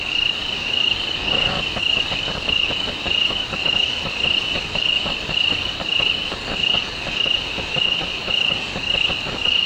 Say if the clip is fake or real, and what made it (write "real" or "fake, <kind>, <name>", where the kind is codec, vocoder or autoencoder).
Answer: fake, codec, DAC